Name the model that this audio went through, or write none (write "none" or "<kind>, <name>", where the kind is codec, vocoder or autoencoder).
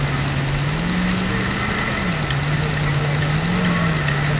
none